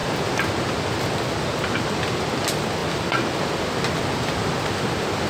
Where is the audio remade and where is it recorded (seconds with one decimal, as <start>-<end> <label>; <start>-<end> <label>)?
0.0-5.3 recorded